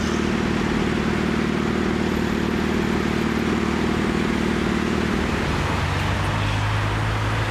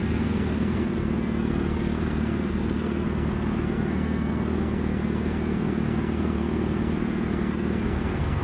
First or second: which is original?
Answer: first